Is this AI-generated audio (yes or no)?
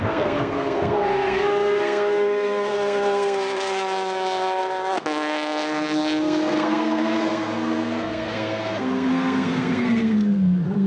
yes